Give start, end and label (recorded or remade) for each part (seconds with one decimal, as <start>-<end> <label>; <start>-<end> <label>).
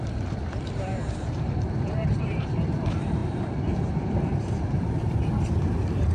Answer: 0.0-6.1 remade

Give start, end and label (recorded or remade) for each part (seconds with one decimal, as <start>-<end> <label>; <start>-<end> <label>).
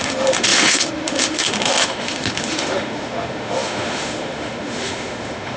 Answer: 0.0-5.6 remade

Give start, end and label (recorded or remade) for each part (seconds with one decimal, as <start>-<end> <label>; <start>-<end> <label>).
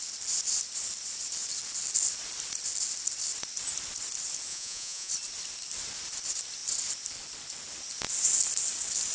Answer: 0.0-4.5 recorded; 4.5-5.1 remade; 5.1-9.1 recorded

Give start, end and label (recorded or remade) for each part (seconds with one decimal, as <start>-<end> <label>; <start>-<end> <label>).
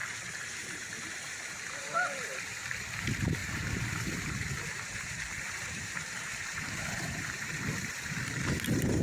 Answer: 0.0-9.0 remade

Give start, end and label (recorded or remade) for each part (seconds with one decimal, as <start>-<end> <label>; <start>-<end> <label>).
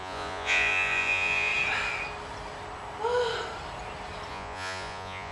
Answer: 0.0-1.5 remade; 1.5-4.3 recorded; 4.3-5.3 remade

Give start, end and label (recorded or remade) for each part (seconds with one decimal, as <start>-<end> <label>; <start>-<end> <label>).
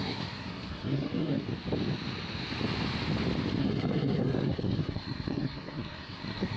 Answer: 0.0-1.5 remade; 1.5-3.6 recorded; 3.6-6.6 remade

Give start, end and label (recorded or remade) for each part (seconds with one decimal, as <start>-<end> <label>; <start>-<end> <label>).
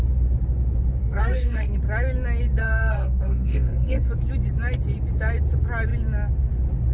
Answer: 0.0-1.0 recorded; 1.0-1.7 remade; 1.7-2.6 recorded; 2.6-4.1 remade; 4.1-6.9 recorded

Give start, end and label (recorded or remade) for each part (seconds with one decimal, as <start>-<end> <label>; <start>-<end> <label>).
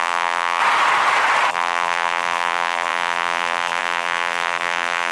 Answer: 0.0-0.6 remade; 0.6-1.5 recorded; 1.5-5.1 remade